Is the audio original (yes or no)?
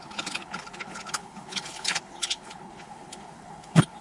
no